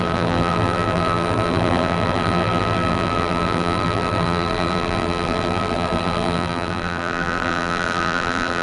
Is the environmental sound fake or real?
fake